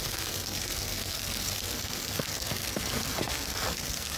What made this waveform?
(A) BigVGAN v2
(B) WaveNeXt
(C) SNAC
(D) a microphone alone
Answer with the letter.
C